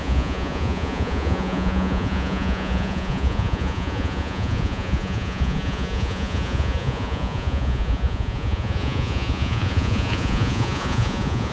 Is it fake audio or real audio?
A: fake